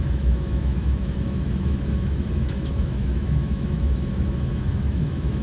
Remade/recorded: remade